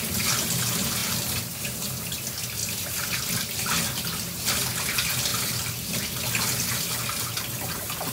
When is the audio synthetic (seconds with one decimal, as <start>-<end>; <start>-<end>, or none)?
none